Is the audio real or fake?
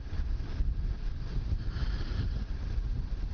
real